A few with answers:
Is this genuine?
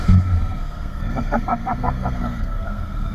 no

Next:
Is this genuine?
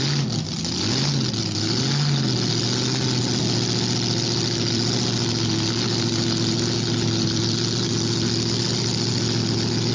yes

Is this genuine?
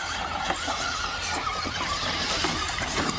yes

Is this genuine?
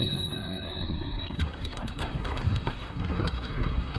no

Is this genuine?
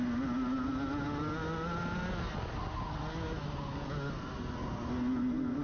yes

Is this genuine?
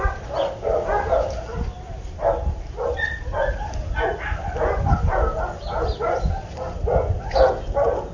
yes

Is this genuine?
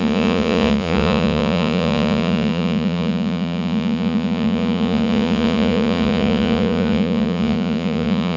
no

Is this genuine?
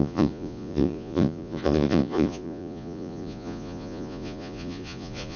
no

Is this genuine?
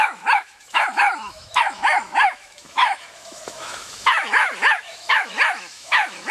no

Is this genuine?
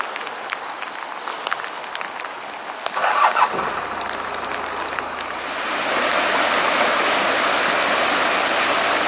yes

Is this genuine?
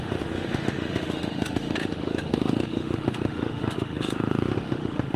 no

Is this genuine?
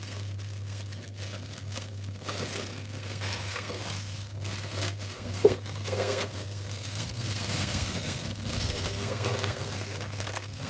no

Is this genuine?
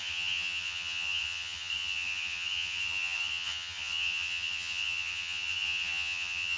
no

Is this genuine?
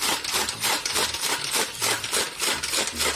no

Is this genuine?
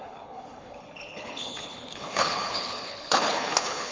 no